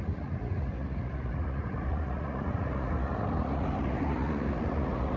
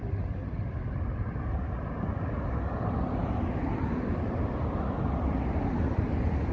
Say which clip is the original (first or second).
second